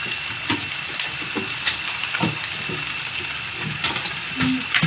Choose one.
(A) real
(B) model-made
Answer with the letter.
A